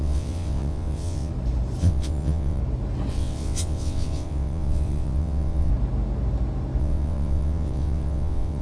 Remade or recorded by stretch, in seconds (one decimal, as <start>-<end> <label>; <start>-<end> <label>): 0.0-1.3 remade; 1.3-1.8 recorded; 1.8-2.6 remade; 2.6-3.1 recorded; 3.1-5.7 remade; 5.7-6.8 recorded; 6.8-8.6 remade